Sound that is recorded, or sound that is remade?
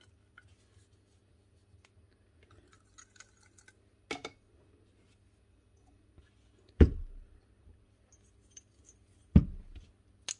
recorded